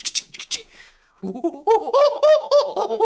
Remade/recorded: remade